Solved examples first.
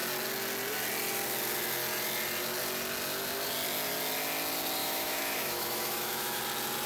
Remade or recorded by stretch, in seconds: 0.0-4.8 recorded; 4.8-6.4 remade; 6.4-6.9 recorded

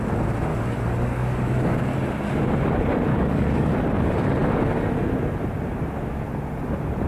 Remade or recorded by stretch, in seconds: 0.0-0.5 recorded; 0.5-1.9 remade; 1.9-3.1 recorded; 3.1-3.7 remade; 3.7-7.1 recorded

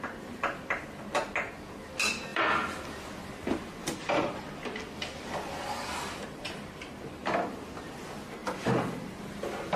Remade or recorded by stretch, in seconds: 0.0-2.3 recorded; 2.3-6.7 remade; 6.7-7.2 recorded; 7.2-7.9 remade; 7.9-8.4 recorded; 8.4-9.4 remade; 9.4-9.8 recorded

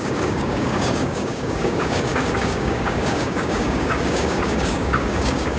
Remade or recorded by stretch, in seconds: 0.0-5.6 remade

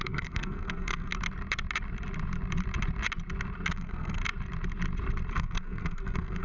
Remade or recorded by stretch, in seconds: 0.0-1.1 remade; 1.1-3.7 recorded; 3.7-4.2 remade; 4.2-5.3 recorded; 5.3-6.4 remade